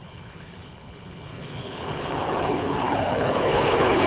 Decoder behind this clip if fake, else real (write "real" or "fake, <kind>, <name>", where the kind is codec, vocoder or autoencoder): fake, codec, HILCodec